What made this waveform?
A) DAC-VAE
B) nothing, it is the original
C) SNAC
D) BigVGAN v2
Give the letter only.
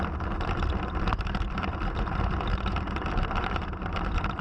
D